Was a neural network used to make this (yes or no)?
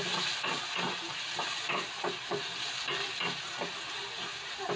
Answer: no